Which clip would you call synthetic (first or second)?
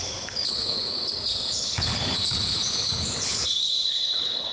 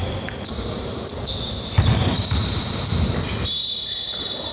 first